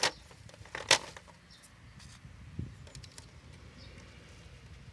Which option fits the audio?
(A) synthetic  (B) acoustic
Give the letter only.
B